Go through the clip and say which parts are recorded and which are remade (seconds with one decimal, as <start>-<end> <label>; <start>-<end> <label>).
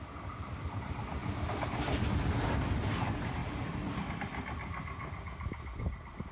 0.0-1.2 recorded; 1.2-2.0 remade; 2.0-6.3 recorded